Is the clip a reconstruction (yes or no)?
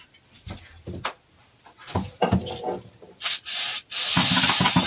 no